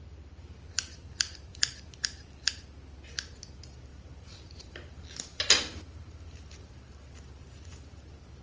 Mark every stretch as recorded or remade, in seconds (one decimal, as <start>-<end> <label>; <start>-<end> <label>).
0.0-0.9 recorded; 0.9-2.5 remade; 2.5-3.9 recorded; 3.9-6.7 remade; 6.7-8.4 recorded